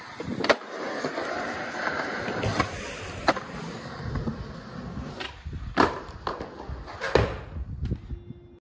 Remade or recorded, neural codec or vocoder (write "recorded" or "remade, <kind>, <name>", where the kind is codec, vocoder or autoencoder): recorded